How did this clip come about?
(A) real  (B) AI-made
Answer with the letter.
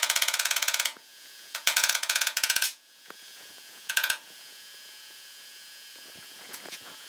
B